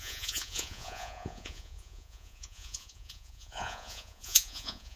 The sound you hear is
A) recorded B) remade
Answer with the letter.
B